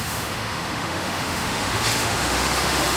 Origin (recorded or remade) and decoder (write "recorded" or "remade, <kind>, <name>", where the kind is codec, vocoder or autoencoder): remade, autoencoder, DAC-VAE